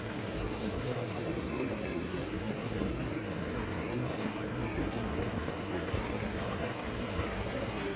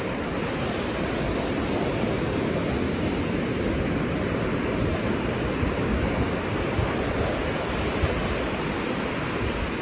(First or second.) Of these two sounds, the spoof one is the first